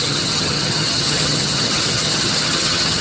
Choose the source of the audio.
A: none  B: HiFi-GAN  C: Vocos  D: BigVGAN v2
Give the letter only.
B